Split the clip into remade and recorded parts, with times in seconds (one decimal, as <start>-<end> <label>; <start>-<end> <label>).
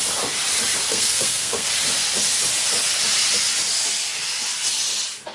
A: 0.0-0.9 recorded; 0.9-1.7 remade; 1.7-5.3 recorded